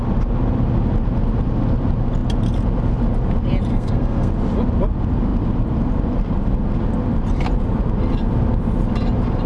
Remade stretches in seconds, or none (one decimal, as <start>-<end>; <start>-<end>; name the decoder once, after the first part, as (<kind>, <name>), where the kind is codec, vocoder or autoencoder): 3.7-4.3 (codec, SNAC)